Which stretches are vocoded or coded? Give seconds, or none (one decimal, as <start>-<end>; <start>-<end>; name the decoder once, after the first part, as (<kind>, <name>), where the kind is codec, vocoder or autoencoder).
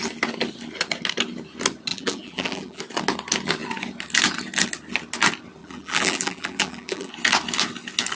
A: 1.9-2.8 (vocoder, BigVGAN v2); 5.6-7.1